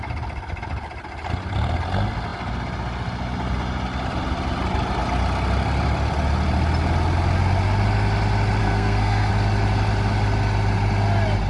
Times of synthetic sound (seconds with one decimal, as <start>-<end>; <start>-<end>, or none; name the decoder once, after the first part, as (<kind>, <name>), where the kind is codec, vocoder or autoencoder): 8.6-9.3 (codec, SNAC)